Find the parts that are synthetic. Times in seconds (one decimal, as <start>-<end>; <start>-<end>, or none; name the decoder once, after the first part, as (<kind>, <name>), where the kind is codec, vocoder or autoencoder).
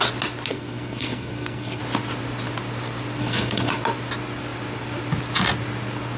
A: 0.5-1.8 (codec, SNAC); 3.2-3.7